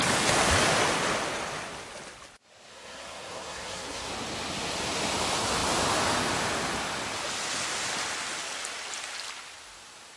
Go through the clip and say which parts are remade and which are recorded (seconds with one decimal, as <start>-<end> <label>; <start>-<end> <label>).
0.0-2.7 recorded; 2.7-4.1 remade; 4.1-10.2 recorded